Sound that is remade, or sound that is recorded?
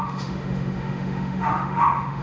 remade